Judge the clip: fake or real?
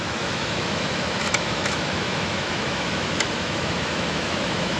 fake